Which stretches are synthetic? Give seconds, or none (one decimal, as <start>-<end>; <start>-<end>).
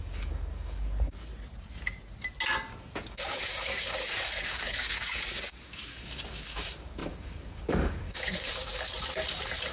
0.0-1.3; 3.1-8.9